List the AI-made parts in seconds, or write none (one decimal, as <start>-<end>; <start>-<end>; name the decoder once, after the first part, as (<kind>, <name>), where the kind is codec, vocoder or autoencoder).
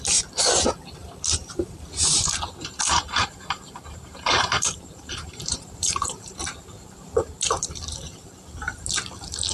1.0-2.3 (vocoder, BigVGAN v2); 3.1-8.3